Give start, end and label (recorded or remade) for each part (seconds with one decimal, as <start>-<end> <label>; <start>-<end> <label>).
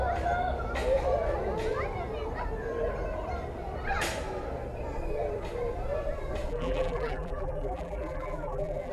0.0-6.5 recorded; 6.5-8.9 remade